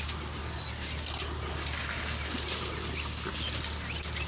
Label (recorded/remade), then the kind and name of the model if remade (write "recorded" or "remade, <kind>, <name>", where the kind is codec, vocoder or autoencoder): recorded